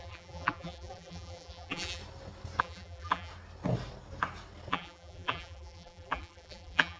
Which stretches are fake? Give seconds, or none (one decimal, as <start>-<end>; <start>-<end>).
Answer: 0.0-2.0; 2.6-3.3; 4.7-7.0